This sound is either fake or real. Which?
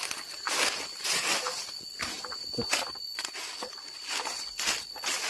real